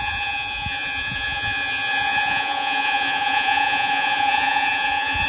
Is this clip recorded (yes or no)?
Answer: no